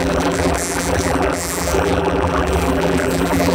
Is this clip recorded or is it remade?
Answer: remade